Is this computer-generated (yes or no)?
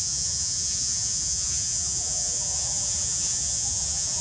yes